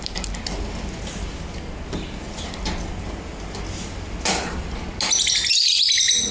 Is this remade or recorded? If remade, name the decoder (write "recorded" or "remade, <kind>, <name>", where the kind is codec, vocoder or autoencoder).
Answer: recorded